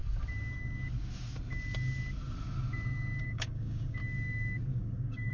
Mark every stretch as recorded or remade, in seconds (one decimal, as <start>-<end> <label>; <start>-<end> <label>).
0.0-3.2 recorded; 3.2-4.0 remade; 4.0-4.7 recorded; 4.7-5.3 remade